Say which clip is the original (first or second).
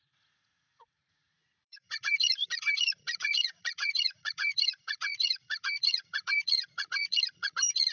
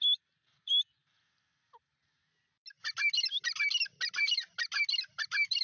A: second